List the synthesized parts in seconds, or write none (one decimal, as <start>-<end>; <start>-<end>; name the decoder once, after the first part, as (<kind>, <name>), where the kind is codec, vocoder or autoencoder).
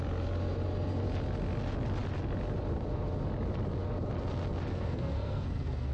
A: 4.7-5.9 (codec, SNAC)